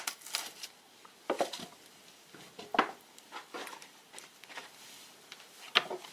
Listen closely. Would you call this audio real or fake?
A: real